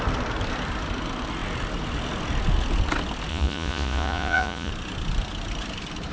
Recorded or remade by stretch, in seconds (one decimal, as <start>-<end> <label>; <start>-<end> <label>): 0.0-3.3 recorded; 3.3-4.7 remade; 4.7-6.1 recorded